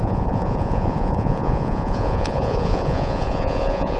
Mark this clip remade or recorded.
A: remade